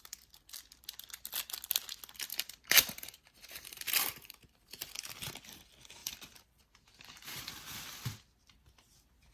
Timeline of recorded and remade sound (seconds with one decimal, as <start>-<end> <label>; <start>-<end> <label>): 0.0-2.3 recorded; 2.3-4.9 remade; 4.9-6.0 recorded; 6.0-7.5 remade; 7.5-9.3 recorded